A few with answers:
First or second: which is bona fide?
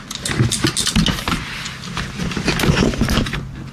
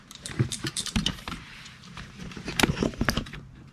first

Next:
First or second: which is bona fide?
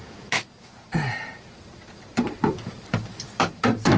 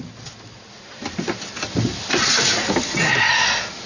second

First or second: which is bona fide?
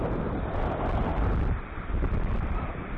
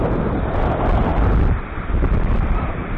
second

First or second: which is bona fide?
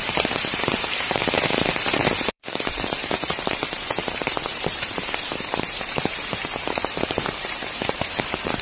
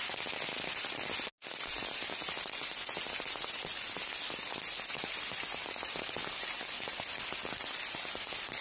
second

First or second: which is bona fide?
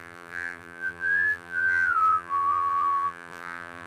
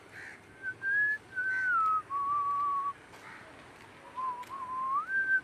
second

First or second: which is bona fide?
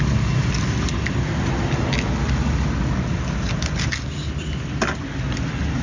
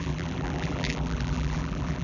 first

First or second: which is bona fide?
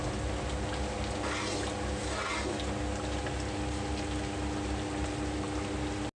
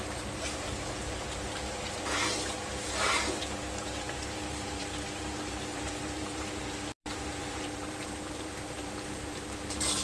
first